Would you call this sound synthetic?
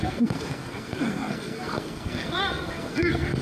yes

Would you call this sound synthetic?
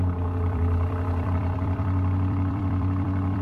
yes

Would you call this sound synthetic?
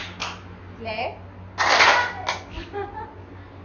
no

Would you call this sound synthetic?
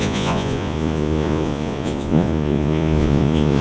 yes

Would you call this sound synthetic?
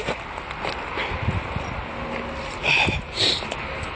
no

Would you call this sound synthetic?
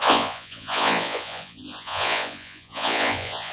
yes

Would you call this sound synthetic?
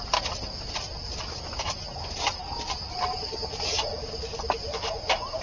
no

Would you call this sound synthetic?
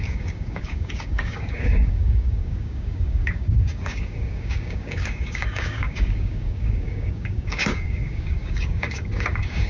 yes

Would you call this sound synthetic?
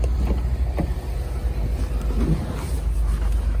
no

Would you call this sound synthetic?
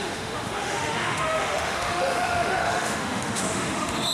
yes